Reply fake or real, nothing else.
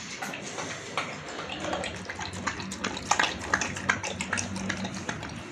real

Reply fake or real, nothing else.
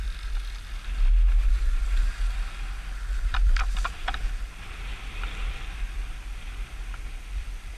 real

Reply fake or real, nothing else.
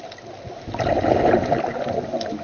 real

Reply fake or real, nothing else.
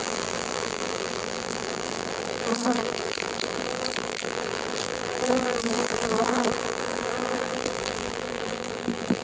fake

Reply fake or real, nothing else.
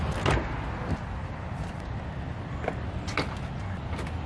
real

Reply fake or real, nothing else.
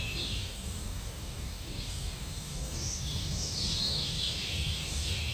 fake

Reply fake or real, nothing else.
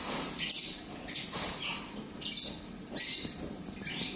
real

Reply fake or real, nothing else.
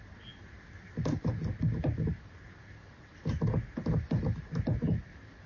real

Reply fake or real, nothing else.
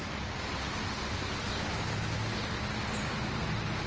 real